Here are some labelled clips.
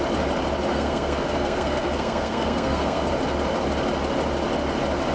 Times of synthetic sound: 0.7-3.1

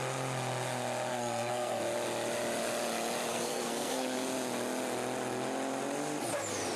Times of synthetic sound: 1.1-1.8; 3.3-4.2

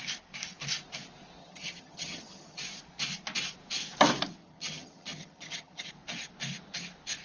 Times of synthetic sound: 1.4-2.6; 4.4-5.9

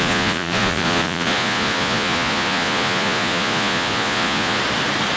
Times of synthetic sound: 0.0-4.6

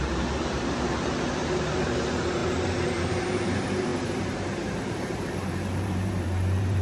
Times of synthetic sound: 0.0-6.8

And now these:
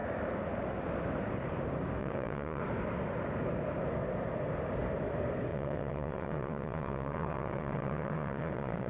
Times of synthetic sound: 2.0-2.6; 5.5-8.9

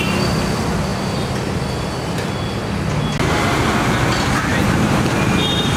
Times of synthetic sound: 4.5-5.8

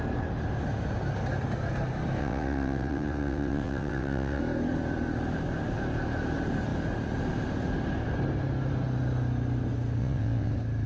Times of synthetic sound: 2.2-4.4; 10.0-10.5